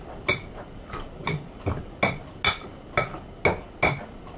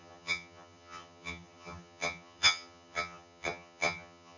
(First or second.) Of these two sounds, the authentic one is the first